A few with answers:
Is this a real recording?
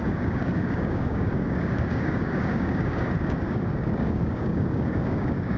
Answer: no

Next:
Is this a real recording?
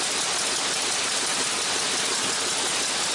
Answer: yes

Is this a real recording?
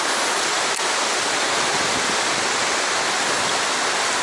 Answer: yes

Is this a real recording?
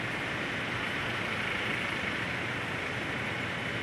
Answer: yes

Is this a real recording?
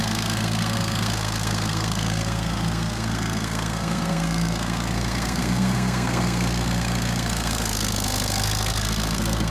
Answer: no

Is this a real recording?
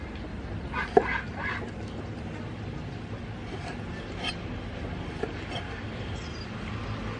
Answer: yes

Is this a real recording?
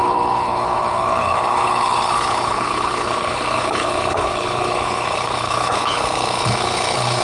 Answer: no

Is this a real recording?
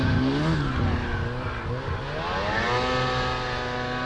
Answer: yes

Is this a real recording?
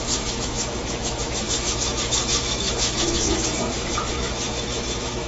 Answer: no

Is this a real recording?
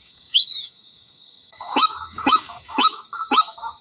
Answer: no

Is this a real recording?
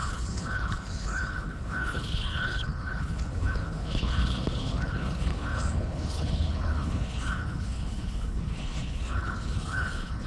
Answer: no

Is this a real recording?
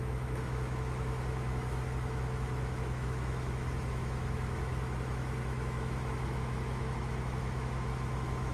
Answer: no